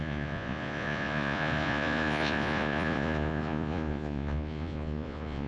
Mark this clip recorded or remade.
remade